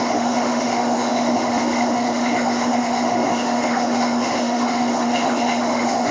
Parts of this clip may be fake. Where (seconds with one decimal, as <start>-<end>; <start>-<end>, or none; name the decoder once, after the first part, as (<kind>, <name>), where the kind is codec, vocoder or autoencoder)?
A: 0.0-6.1 (autoencoder, DAC-VAE)